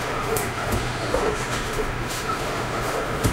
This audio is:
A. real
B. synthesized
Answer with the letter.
B